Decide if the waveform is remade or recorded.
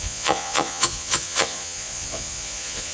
remade